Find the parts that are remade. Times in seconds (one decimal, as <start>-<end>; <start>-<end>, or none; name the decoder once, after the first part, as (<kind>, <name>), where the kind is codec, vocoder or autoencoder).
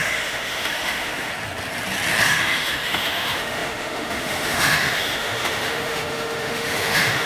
0.0-1.3 (autoencoder, DAC-VAE); 2.2-7.3